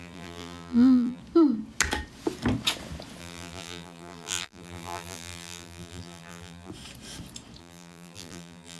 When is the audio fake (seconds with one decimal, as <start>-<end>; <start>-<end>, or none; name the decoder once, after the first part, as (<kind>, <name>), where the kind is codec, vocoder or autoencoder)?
0.0-1.2 (vocoder, BigVGAN v2); 3.2-6.7; 7.6-8.8